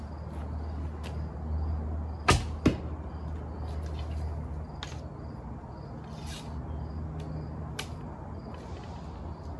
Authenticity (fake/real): real